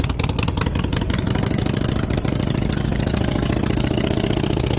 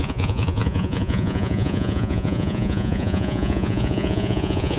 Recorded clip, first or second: first